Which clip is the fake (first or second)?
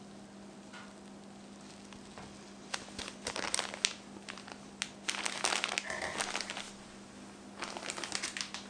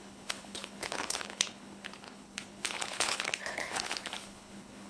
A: second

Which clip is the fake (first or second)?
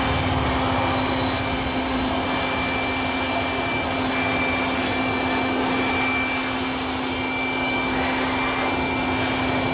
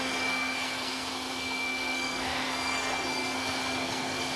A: second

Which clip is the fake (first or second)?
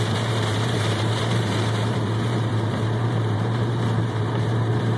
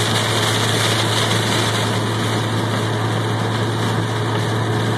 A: first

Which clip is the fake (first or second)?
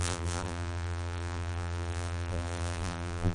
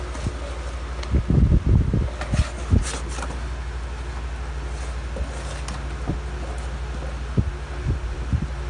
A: first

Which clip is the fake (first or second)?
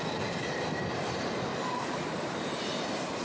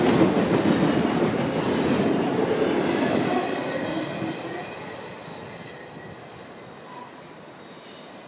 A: first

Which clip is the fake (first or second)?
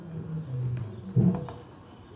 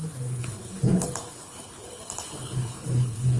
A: second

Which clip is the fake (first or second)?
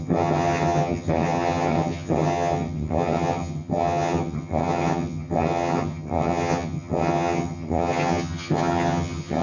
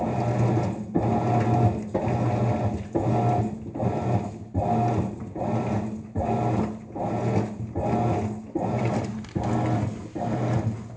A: first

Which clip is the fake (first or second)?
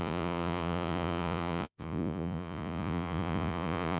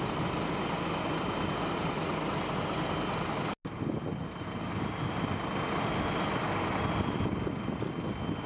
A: first